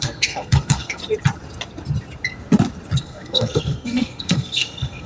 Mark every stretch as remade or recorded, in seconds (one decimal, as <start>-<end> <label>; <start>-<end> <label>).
0.0-1.0 remade; 1.0-3.0 recorded; 3.0-5.1 remade